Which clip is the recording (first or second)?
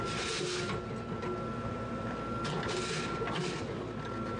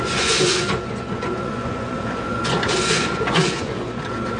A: first